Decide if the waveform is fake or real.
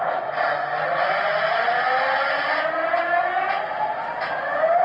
real